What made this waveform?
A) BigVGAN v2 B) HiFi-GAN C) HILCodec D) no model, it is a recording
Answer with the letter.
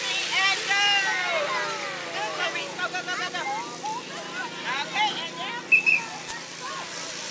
D